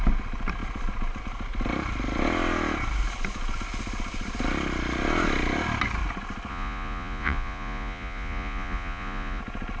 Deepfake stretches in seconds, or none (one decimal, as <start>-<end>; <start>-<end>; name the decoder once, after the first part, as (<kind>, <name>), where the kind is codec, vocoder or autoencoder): 6.5-9.4 (vocoder, Vocos)